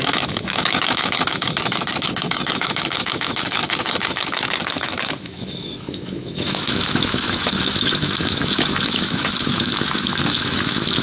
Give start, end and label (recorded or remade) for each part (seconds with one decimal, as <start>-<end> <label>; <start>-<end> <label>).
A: 0.0-11.0 remade